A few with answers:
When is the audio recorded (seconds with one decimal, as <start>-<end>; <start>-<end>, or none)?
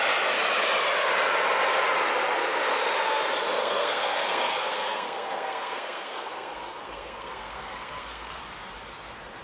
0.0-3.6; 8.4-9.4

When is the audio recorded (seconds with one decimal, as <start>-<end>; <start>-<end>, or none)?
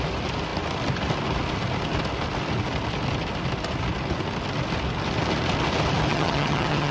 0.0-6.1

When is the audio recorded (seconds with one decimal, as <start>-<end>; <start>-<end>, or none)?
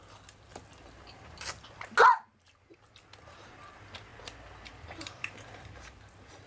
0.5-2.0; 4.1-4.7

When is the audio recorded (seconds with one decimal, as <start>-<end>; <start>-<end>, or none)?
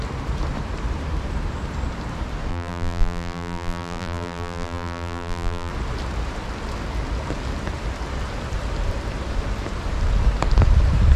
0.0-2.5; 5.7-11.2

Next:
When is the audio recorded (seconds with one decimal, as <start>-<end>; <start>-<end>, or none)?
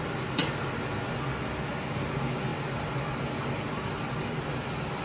0.0-5.0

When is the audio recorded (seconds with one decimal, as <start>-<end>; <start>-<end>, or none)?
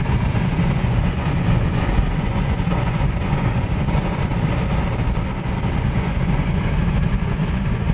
4.3-5.7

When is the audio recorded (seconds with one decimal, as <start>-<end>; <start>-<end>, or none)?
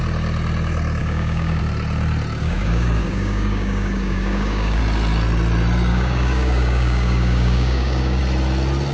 0.0-1.0; 1.6-2.4; 4.8-5.9; 8.2-8.9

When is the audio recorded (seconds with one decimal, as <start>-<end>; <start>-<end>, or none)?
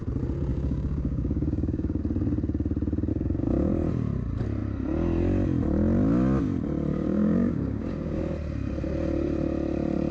0.0-0.5; 2.0-3.1; 3.7-6.9; 8.2-10.1